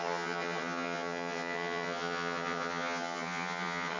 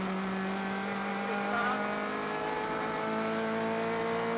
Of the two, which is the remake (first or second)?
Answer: first